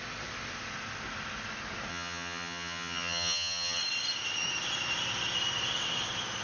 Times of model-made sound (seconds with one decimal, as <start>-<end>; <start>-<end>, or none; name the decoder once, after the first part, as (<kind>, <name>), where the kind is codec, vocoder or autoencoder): 1.9-3.8 (vocoder, HiFi-GAN)